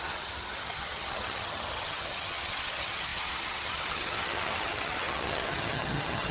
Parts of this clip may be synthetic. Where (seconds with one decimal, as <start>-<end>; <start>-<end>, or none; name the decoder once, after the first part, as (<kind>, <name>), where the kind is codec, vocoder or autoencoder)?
0.0-6.3 (vocoder, HiFi-GAN)